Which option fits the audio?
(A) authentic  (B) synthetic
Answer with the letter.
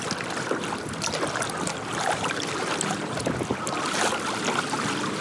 A